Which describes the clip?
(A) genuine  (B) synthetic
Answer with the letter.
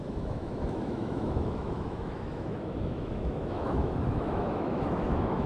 B